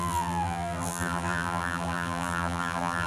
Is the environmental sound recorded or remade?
remade